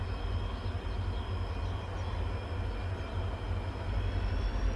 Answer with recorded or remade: recorded